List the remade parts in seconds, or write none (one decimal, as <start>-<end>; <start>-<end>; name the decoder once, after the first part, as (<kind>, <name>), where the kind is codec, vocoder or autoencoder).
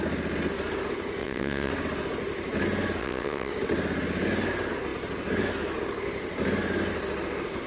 1.2-1.7 (vocoder, WaveNeXt); 3.0-3.5